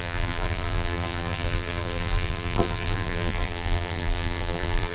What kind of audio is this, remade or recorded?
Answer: remade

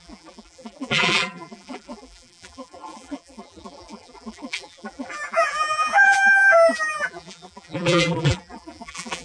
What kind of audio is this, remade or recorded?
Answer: remade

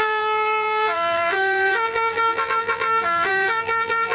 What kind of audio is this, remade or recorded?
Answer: remade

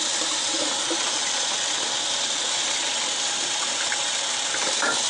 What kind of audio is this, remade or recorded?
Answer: remade